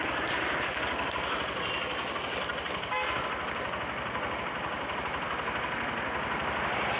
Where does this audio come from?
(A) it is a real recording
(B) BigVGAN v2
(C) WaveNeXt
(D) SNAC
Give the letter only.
A